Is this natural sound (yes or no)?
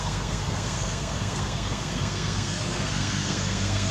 no